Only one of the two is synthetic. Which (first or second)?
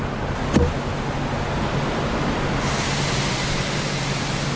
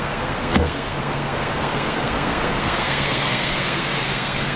second